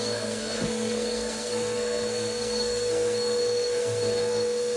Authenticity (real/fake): fake